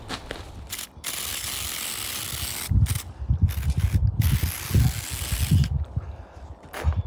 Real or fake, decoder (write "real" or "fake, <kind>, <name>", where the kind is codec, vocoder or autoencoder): real